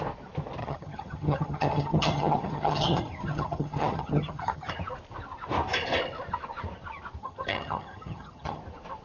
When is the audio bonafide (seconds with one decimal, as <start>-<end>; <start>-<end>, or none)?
0.0-0.6; 4.7-7.2; 8.6-9.0